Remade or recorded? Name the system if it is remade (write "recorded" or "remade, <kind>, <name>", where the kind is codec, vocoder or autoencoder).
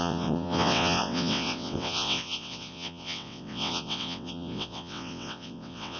remade, vocoder, WaveNeXt